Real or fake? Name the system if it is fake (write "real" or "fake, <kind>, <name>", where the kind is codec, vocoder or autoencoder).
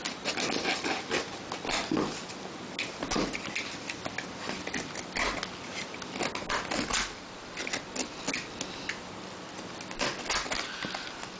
real